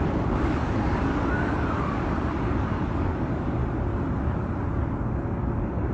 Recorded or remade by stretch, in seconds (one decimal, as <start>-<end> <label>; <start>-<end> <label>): 0.0-3.6 remade; 3.6-5.1 recorded; 5.1-5.9 remade